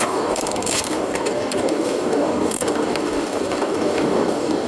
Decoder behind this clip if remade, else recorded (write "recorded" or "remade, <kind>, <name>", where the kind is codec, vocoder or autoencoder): remade, codec, DAC